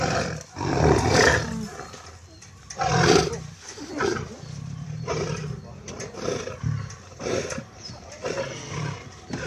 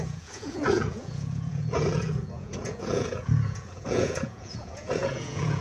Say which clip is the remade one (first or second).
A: second